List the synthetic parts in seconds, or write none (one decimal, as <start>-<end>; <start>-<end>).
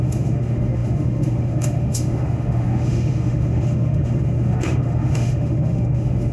0.0-6.3